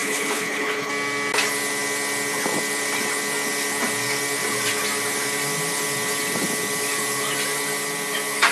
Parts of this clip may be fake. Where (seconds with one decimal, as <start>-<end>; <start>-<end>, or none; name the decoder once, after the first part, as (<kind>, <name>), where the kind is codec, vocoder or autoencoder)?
0.0-0.9 (codec, HILCodec)